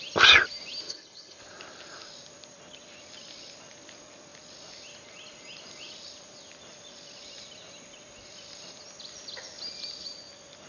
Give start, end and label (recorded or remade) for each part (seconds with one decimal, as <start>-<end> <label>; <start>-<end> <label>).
0.0-0.9 recorded; 0.9-1.4 remade; 1.4-10.7 recorded